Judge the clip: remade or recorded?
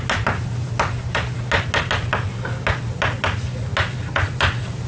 recorded